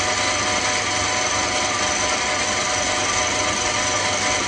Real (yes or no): yes